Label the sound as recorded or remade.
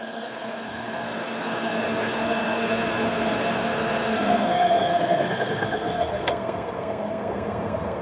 remade